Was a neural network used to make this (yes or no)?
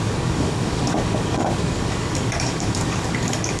yes